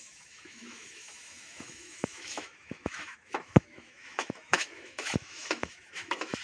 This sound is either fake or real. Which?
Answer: fake